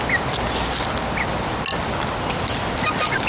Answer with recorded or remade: recorded